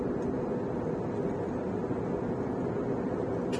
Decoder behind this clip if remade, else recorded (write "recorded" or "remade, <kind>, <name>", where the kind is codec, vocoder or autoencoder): recorded